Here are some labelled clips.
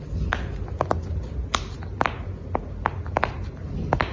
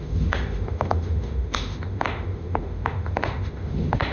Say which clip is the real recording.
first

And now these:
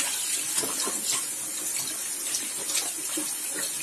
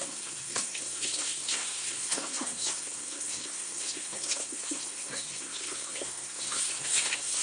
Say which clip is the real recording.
first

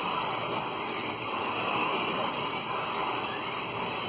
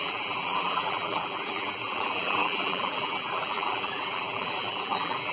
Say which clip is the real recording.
first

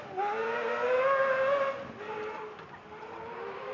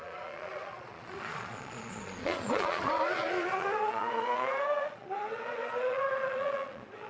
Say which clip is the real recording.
first